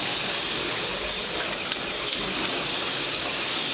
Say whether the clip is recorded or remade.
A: recorded